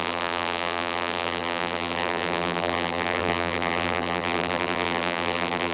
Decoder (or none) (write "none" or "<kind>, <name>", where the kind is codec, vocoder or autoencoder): vocoder, BigVGAN v2